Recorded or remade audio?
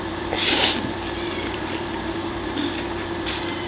remade